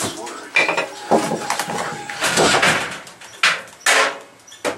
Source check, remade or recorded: recorded